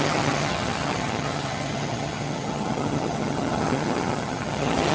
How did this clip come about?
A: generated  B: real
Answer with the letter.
A